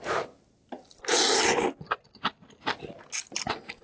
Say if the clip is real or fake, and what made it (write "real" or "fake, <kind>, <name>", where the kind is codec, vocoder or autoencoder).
real